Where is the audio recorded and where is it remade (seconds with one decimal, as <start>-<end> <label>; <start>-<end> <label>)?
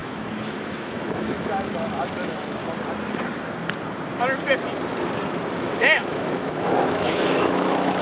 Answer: 0.0-2.6 remade; 2.6-5.5 recorded; 5.5-8.0 remade